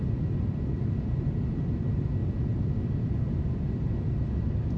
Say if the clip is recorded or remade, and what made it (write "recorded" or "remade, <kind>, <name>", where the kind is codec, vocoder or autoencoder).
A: recorded